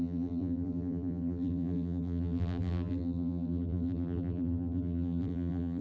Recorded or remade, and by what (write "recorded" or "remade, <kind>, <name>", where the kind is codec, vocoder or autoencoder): remade, vocoder, BigVGAN v2